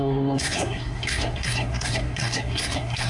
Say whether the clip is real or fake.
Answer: fake